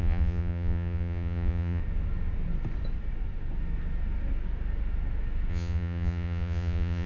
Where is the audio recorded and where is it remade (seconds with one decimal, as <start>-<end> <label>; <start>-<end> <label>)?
0.0-1.8 remade; 1.8-5.5 recorded; 5.5-7.1 remade